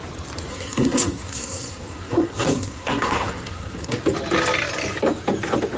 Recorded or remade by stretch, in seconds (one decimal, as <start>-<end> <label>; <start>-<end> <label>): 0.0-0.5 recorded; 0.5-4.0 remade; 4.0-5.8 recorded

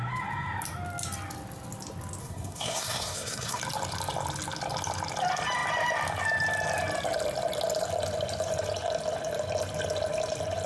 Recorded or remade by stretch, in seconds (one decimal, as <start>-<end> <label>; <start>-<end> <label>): 0.0-2.2 recorded; 2.2-3.6 remade; 3.6-10.7 recorded

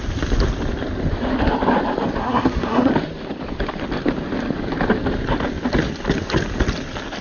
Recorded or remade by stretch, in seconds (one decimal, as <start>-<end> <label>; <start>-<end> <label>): 0.0-2.2 recorded; 2.2-2.9 remade; 2.9-7.2 recorded

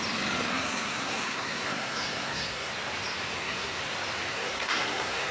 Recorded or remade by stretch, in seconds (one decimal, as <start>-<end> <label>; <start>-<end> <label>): 0.0-0.5 recorded; 0.5-2.7 remade; 2.7-3.3 recorded; 3.3-3.8 remade; 3.8-4.3 recorded; 4.3-5.3 remade